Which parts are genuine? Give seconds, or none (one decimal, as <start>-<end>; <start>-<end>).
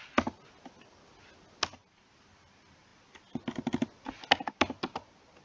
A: 0.0-5.4